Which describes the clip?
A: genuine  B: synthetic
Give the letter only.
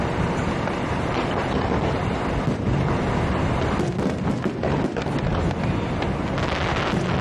A